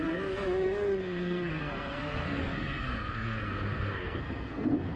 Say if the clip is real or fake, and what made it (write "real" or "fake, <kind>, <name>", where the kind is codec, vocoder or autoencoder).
fake, codec, SNAC